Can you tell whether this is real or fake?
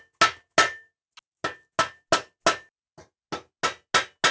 real